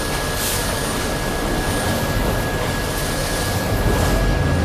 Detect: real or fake real